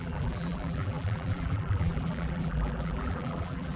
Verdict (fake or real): fake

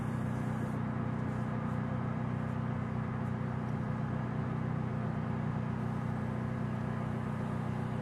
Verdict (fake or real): real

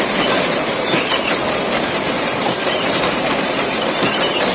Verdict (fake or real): fake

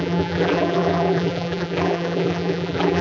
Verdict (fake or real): fake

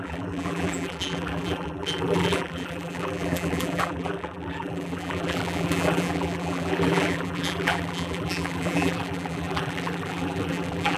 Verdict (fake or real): fake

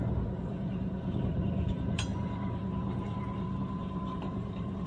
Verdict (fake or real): fake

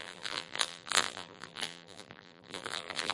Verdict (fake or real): fake